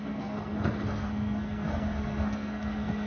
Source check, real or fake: fake